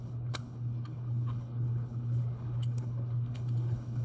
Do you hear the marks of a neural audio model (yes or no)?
yes